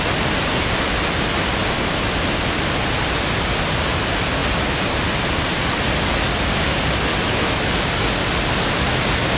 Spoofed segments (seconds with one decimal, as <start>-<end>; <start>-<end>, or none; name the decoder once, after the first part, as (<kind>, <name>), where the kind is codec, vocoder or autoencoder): 7.1-7.9 (autoencoder, DAC-VAE)